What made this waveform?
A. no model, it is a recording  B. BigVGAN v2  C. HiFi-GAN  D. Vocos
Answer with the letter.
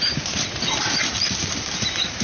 A